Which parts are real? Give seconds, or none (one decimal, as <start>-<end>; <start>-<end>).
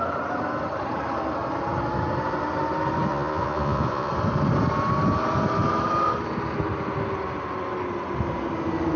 0.0-3.1; 4.1-9.0